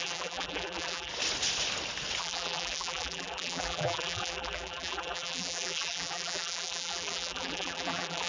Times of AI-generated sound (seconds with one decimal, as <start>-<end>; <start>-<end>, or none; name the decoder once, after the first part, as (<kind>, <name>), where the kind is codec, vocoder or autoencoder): 0.0-1.1 (vocoder, BigVGAN v2); 2.2-8.3